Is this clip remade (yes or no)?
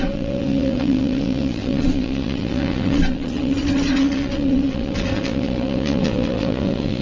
yes